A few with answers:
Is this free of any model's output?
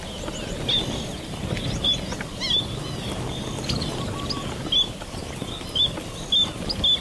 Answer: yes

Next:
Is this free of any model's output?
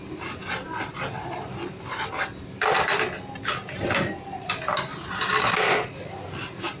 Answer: yes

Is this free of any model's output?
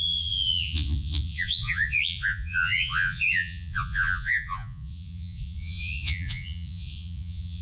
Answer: no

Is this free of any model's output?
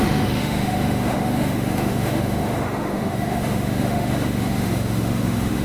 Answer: no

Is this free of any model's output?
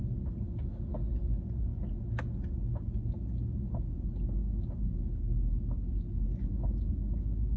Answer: yes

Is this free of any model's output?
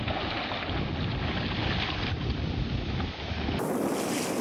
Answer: yes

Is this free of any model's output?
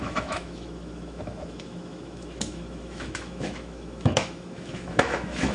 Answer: no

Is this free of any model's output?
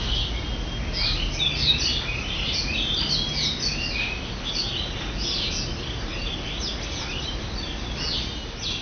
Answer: yes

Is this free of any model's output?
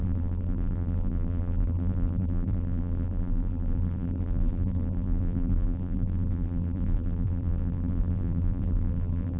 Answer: no